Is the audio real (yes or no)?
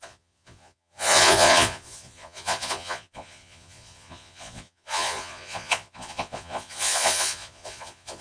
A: no